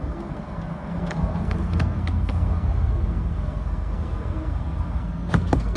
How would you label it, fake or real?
fake